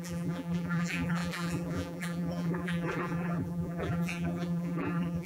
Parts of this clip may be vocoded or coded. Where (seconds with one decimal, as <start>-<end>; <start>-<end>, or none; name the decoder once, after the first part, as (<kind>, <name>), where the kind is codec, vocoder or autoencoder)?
0.0-5.3 (vocoder, BigVGAN v2)